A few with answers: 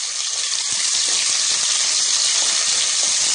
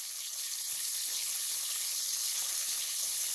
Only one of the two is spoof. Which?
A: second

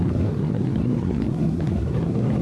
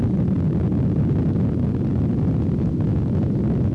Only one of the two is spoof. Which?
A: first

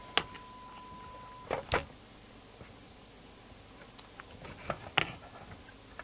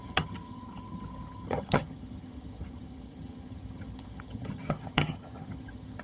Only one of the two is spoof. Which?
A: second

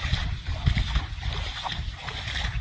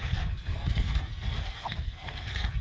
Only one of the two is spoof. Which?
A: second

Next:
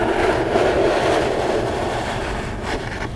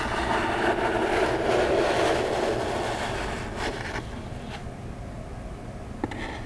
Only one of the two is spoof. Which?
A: first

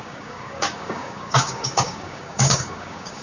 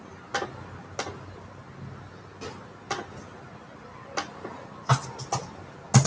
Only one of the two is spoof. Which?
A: first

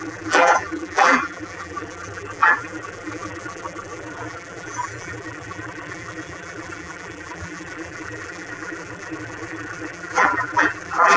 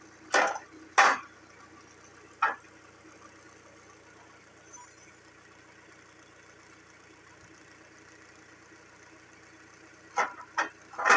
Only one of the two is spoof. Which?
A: first